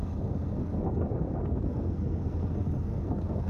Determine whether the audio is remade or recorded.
remade